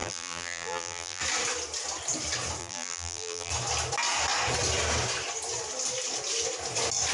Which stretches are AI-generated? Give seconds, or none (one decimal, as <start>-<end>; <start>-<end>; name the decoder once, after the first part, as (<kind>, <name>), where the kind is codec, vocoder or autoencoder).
0.0-1.2 (vocoder, BigVGAN v2); 2.6-3.5